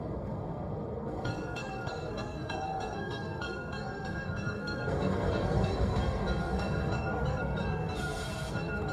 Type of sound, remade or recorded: remade